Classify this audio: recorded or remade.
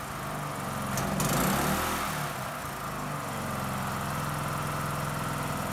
recorded